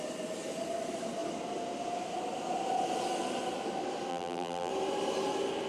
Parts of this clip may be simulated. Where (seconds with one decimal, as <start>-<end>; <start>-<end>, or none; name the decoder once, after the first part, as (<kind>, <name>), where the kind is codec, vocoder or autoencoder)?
4.1-4.7 (vocoder, BigVGAN v2)